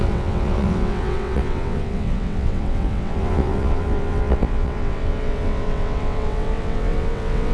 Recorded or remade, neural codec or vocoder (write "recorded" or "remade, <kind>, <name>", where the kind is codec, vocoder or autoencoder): remade, vocoder, WaveNeXt